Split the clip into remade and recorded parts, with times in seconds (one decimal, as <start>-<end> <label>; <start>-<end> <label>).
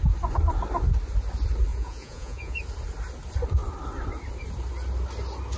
0.0-1.7 recorded; 1.7-2.6 remade; 2.6-5.6 recorded